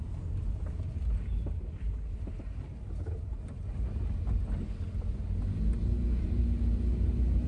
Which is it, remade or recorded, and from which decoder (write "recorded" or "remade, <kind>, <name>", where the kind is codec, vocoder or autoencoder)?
recorded